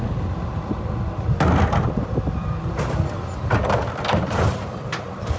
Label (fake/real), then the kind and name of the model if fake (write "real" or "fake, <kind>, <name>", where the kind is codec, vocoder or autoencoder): real